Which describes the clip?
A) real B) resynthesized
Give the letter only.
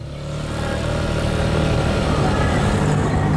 A